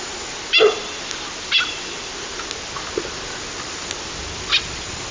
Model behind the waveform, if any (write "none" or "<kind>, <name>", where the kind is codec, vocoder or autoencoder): none